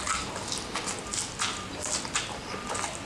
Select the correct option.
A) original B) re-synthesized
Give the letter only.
A